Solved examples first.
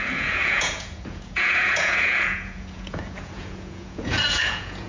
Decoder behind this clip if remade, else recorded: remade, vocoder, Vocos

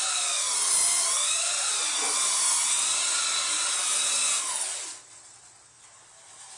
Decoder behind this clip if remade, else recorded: recorded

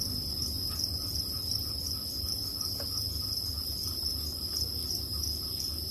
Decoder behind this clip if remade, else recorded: recorded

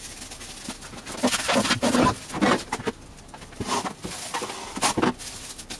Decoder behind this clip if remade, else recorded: recorded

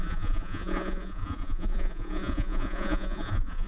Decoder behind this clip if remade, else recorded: remade, vocoder, Vocos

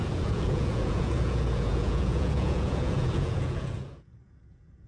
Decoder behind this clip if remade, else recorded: remade, vocoder, Vocos